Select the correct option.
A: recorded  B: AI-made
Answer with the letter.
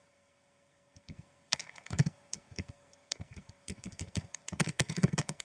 B